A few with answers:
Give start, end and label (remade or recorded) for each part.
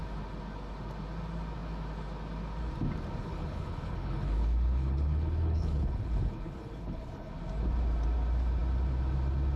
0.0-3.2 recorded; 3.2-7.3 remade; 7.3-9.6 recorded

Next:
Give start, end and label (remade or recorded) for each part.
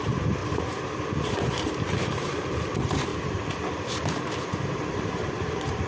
0.0-0.4 remade; 0.4-1.2 recorded; 1.2-3.1 remade; 3.1-4.9 recorded; 4.9-5.9 remade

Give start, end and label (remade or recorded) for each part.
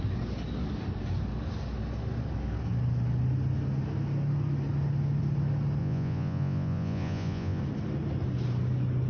0.0-5.8 recorded; 5.8-7.6 remade; 7.6-9.1 recorded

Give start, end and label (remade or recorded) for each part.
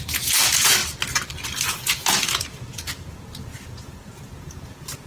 0.0-0.8 remade; 0.8-1.7 recorded; 1.7-5.1 remade